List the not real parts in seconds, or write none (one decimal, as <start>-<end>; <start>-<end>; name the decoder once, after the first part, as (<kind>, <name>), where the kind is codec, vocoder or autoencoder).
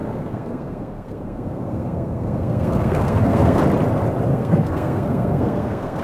0.0-3.6 (codec, SNAC); 4.3-6.0